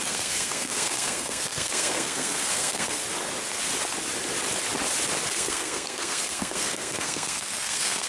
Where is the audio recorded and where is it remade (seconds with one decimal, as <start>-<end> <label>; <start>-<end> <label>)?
0.0-3.0 remade; 3.0-5.3 recorded; 5.3-8.1 remade